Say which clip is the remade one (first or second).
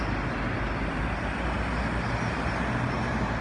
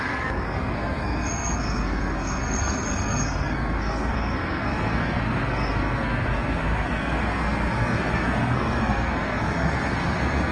second